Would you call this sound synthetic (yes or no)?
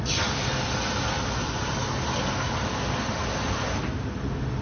no